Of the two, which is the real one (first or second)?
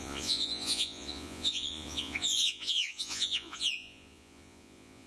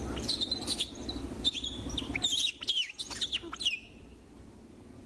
second